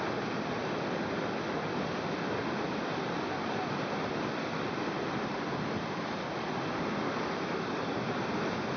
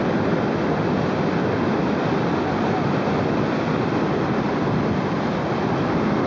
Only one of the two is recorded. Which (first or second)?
second